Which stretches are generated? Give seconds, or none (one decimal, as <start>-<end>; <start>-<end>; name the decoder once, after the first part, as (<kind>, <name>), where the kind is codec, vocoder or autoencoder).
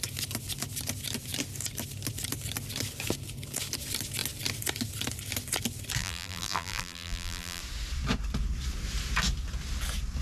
6.0-7.6 (vocoder, BigVGAN v2)